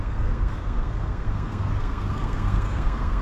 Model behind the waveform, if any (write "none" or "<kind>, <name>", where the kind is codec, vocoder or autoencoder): codec, SNAC